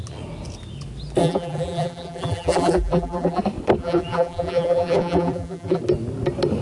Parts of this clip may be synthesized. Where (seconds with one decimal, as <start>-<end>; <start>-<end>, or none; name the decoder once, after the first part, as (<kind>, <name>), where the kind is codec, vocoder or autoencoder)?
1.2-3.4 (vocoder, BigVGAN v2); 3.8-5.8